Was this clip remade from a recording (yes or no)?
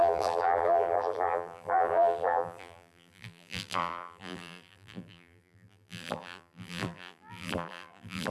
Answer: yes